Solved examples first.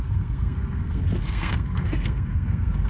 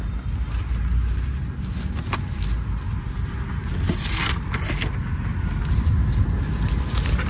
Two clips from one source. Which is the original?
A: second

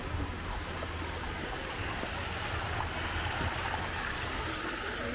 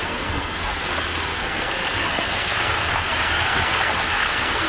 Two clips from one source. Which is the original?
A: first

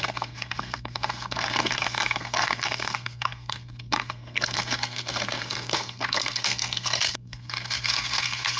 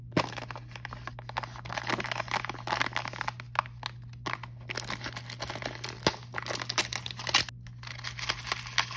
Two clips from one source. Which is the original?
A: second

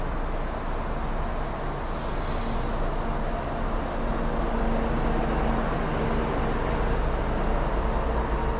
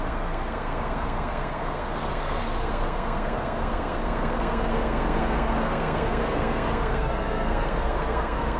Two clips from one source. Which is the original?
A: first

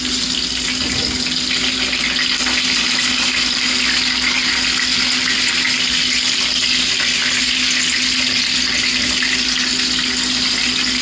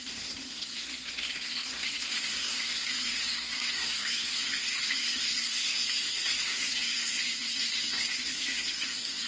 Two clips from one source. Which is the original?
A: first